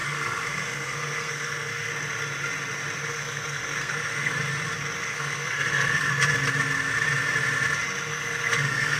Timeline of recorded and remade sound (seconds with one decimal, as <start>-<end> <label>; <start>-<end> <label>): 0.0-1.9 remade; 1.9-3.1 recorded; 3.1-4.3 remade; 4.3-5.1 recorded; 5.1-6.1 remade; 6.1-8.1 recorded; 8.1-9.0 remade